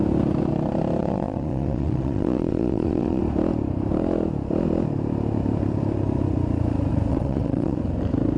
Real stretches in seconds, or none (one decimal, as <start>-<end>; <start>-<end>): 0.0-1.0; 3.2-7.1; 7.8-8.4

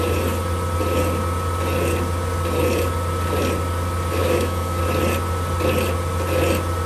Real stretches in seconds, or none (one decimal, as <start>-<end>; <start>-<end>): 0.0-4.2; 4.8-6.9

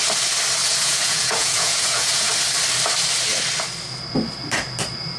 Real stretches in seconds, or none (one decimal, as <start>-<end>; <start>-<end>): 0.0-0.6; 2.3-5.2

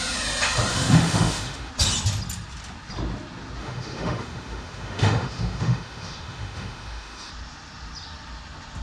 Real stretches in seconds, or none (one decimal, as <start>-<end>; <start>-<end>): 0.0-0.7; 1.7-3.6; 7.3-8.8

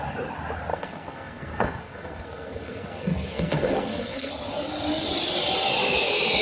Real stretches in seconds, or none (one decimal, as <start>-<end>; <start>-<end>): 0.0-0.7; 4.3-6.4

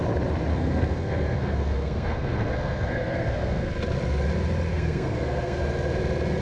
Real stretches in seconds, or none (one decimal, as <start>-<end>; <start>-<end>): 0.0-0.5; 3.7-4.7; 5.6-6.4